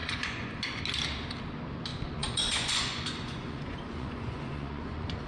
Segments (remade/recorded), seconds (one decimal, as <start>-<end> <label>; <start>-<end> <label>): 0.0-0.8 remade; 0.8-1.9 recorded; 1.9-5.3 remade